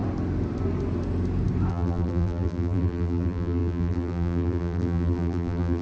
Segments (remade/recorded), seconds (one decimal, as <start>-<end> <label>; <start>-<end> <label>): 0.0-1.7 recorded; 1.7-5.8 remade